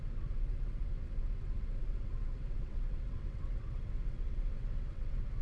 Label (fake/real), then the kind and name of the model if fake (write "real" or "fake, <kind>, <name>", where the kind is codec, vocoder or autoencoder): fake, vocoder, WaveNeXt